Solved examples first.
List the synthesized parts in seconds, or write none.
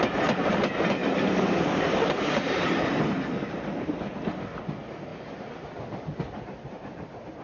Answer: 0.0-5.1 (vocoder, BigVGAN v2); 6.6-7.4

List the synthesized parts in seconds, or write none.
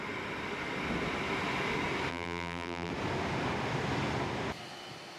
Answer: 2.1-2.9 (vocoder, BigVGAN v2)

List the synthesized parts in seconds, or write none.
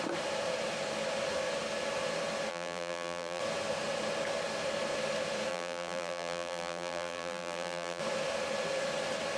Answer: 2.5-3.4 (vocoder, BigVGAN v2); 5.5-8.0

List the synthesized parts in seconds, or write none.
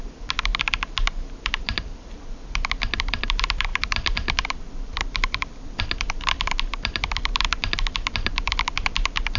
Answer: 0.0-0.5 (vocoder, BigVGAN v2); 1.5-9.4